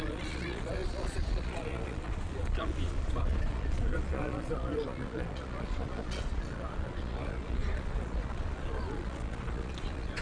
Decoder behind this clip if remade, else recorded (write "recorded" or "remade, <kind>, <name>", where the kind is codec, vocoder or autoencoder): remade, vocoder, Vocos